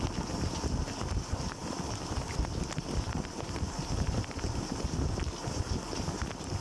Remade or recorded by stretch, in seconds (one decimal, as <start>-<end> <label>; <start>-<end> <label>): 0.0-1.6 recorded; 1.6-5.6 remade; 5.6-6.6 recorded